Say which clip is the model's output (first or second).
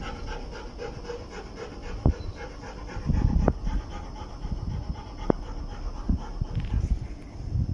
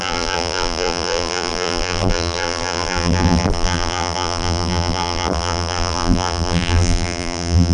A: second